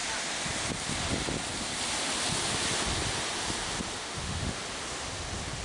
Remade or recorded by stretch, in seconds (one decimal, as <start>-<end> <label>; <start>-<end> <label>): 0.0-4.0 recorded; 4.0-4.6 remade; 4.6-5.6 recorded